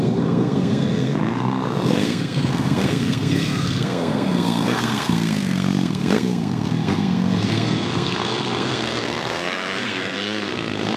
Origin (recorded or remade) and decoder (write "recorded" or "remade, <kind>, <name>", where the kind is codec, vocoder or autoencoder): remade, codec, SNAC